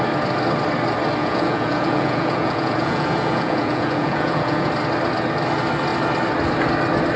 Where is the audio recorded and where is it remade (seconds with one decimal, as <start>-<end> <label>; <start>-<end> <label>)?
0.0-1.2 recorded; 1.2-4.7 remade; 4.7-7.2 recorded